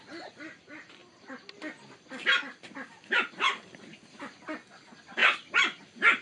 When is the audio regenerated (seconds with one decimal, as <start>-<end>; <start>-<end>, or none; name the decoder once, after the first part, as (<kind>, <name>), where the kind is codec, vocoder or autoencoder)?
none